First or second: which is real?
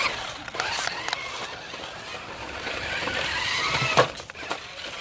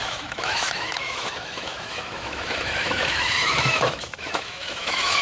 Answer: first